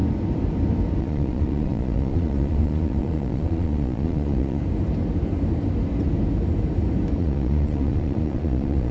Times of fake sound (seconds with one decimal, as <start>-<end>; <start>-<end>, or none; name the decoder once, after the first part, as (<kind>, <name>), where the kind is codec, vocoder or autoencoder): 1.0-4.6 (vocoder, Vocos); 7.2-8.9